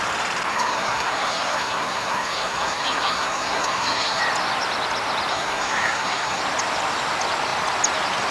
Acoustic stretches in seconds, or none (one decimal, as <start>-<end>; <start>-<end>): 0.0-0.5; 4.2-5.3; 6.4-8.3